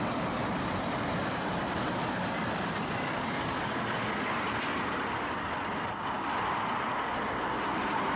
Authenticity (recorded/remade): recorded